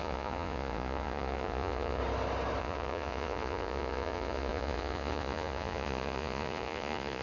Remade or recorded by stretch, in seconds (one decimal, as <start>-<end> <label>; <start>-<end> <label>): 0.0-2.0 remade; 2.0-2.6 recorded; 2.6-7.2 remade